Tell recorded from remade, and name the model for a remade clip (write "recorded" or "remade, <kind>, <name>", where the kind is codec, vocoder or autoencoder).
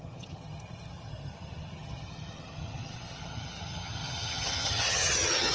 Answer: remade, vocoder, HiFi-GAN